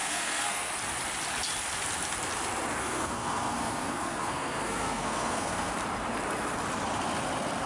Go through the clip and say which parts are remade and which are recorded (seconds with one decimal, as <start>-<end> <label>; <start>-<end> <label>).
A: 0.0-0.7 remade; 0.7-2.8 recorded; 2.8-5.7 remade; 5.7-7.7 recorded